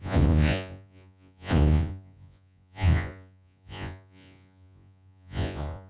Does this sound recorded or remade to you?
remade